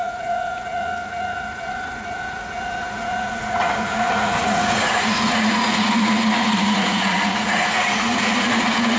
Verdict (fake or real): fake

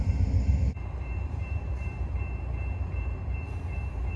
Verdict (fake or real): fake